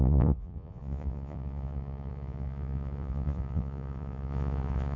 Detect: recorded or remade remade